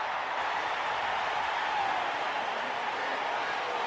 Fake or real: real